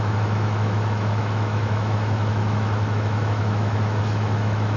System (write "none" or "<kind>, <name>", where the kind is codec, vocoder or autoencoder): autoencoder, DAC-VAE